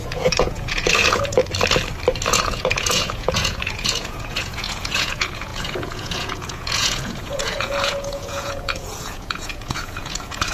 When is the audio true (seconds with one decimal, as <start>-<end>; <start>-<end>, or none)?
1.4-2.3